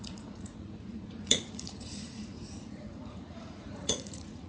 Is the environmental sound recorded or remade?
remade